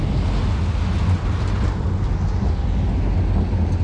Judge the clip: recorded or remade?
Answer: recorded